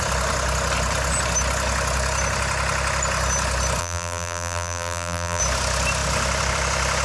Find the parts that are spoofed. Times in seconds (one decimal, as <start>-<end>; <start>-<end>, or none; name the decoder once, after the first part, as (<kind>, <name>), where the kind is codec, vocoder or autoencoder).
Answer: 3.8-5.4 (vocoder, BigVGAN v2)